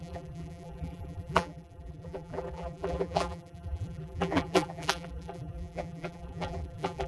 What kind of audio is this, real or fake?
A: fake